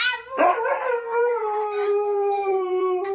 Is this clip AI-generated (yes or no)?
yes